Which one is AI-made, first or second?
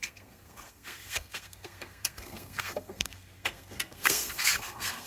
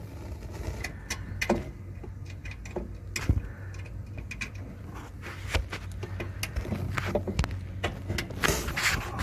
first